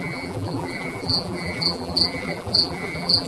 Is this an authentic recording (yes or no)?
no